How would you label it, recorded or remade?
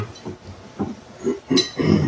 recorded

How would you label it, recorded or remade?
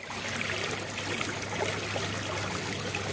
recorded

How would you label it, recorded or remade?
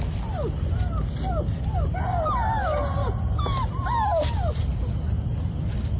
recorded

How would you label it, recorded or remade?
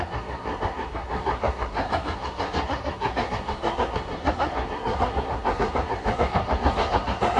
remade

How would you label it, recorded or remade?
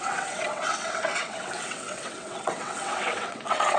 remade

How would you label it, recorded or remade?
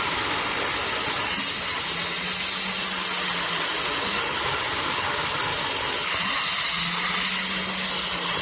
recorded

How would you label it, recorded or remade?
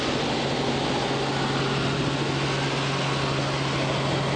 recorded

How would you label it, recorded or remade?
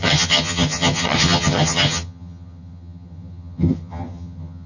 remade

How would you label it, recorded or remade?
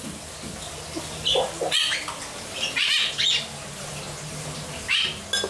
recorded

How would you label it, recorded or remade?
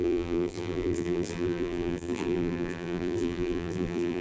remade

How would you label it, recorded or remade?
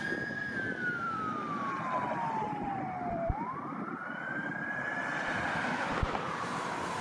remade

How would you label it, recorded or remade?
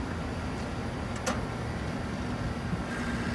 recorded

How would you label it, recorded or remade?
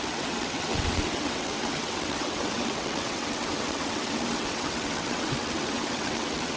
remade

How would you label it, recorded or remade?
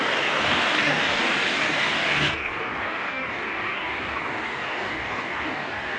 remade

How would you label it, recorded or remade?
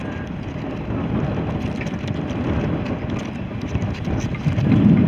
recorded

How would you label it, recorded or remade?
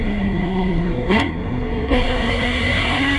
remade